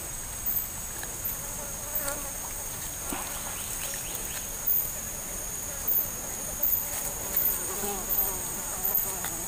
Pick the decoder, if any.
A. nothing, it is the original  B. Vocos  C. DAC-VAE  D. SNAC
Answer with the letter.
A